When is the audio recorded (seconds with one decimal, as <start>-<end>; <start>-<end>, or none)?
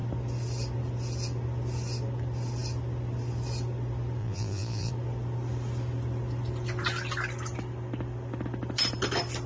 0.0-4.2; 4.9-9.5